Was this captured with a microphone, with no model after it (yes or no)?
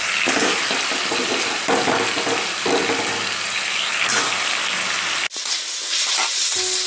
yes